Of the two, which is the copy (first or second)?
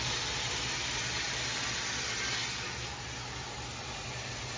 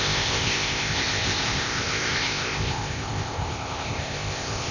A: second